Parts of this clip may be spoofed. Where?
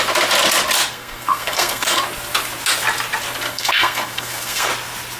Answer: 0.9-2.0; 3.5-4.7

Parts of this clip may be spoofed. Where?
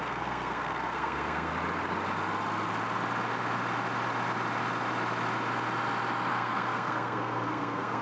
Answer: 0.0-1.5; 6.3-8.0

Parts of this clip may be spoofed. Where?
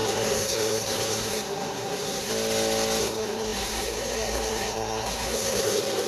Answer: 0.0-2.3; 3.0-6.1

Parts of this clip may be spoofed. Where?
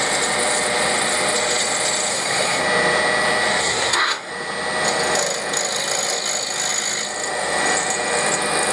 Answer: 2.1-2.6; 3.6-4.3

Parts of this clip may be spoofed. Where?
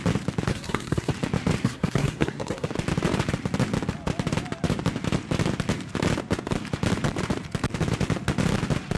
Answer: 0.5-1.1; 1.6-2.7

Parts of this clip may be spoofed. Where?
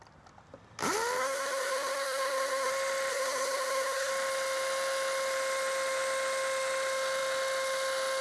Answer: 1.2-2.7; 3.1-4.1